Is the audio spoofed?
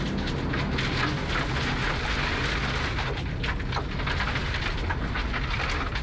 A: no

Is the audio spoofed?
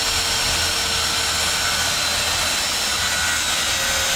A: no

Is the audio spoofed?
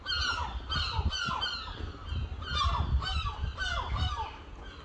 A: no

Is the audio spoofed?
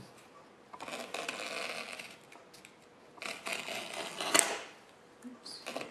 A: no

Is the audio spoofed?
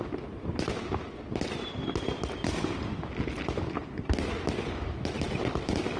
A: no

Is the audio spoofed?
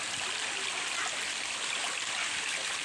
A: no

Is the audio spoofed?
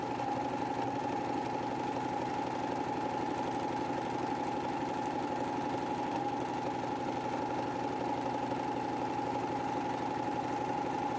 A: no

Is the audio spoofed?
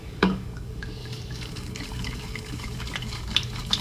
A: yes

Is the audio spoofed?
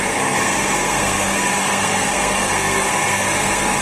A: yes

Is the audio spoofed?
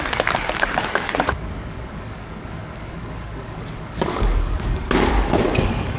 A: yes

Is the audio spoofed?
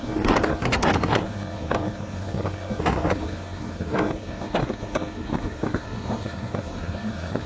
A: yes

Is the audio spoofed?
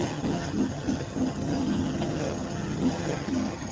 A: yes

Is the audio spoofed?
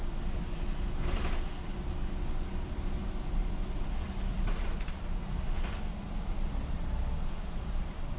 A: no